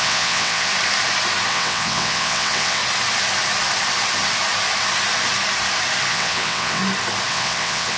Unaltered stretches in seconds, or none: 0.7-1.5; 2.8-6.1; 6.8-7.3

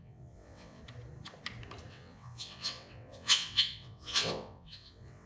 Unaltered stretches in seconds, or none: 0.8-1.9

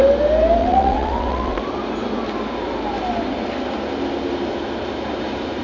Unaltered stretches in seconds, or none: 0.0-0.6; 1.6-5.6

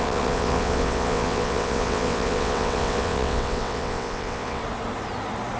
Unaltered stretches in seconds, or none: 4.6-5.6

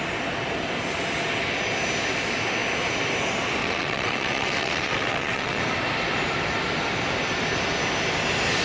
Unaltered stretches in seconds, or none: 0.0-3.6; 5.6-8.6

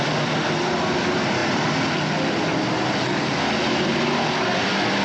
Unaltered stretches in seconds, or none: 0.0-5.0